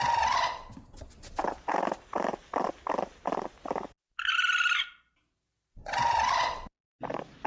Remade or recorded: recorded